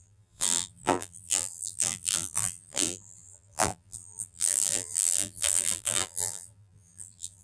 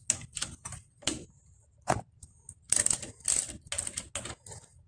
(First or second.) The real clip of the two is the second